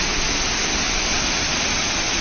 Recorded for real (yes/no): yes